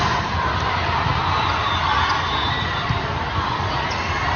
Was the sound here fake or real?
real